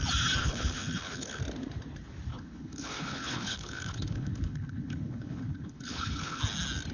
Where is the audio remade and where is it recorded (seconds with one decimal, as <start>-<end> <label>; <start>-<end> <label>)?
0.0-0.4 recorded; 0.4-1.4 remade; 1.4-2.3 recorded; 2.3-6.4 remade; 6.4-6.9 recorded